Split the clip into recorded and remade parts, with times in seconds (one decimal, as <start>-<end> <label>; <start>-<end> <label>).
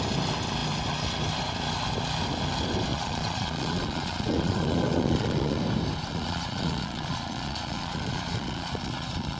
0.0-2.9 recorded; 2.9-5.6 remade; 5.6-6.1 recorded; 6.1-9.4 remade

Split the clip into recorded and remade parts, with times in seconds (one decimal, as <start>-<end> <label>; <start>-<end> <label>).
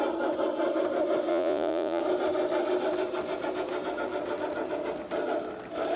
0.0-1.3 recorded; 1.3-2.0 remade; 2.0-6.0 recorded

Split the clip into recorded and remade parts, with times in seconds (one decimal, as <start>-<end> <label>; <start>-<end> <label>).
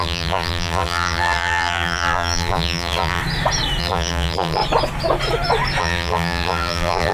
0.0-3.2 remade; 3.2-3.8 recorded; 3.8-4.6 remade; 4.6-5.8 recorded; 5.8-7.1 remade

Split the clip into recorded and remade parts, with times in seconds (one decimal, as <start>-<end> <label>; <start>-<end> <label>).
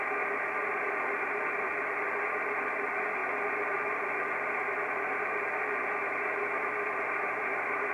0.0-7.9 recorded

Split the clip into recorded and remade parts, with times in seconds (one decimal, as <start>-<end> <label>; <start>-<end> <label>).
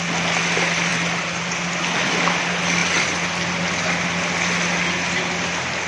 0.0-5.9 recorded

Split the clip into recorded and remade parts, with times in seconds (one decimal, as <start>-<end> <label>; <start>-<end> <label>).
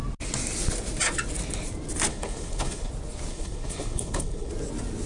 0.0-2.1 recorded; 2.1-2.9 remade; 2.9-3.3 recorded; 3.3-4.5 remade; 4.5-5.1 recorded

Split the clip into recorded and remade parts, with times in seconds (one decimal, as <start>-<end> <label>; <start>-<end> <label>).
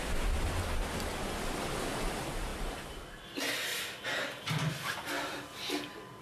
0.0-2.5 recorded; 2.5-3.3 remade; 3.3-6.2 recorded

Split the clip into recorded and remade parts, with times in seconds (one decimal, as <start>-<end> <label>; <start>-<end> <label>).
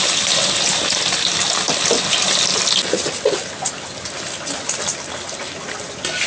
0.0-6.3 recorded